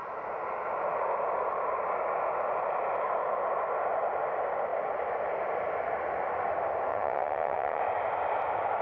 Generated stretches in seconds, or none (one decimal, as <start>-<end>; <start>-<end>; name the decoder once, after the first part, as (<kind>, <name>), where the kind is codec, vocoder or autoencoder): 6.9-7.8 (vocoder, WaveNeXt)